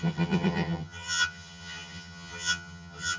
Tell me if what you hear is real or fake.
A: fake